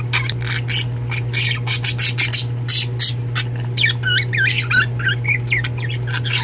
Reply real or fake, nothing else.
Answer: real